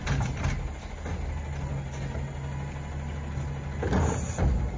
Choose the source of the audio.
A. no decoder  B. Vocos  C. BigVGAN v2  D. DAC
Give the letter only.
A